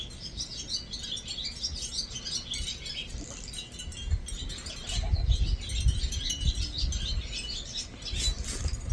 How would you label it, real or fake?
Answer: real